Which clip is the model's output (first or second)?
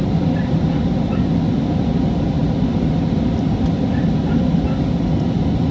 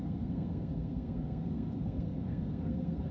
second